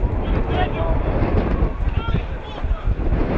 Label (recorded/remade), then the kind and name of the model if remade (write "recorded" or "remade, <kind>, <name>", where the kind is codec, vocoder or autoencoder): recorded